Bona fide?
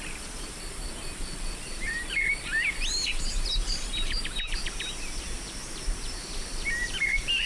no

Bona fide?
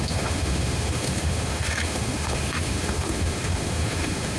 no